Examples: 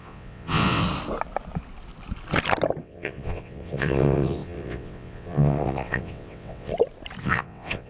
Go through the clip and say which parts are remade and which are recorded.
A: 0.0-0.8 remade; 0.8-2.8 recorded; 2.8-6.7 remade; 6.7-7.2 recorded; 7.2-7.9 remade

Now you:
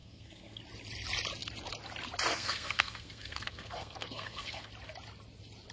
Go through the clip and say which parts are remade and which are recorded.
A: 0.0-0.6 remade; 0.6-2.3 recorded; 2.3-4.7 remade; 4.7-5.7 recorded

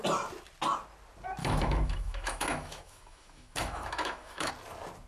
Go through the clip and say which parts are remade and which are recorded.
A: 0.0-1.4 recorded; 1.4-4.5 remade; 4.5-5.1 recorded

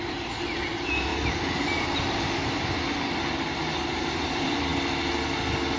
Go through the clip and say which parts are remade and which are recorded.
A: 0.0-1.1 remade; 1.1-3.5 recorded; 3.5-4.7 remade; 4.7-5.8 recorded